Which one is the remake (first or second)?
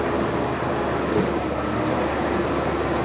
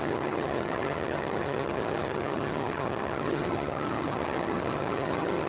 second